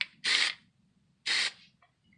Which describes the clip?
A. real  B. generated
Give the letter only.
A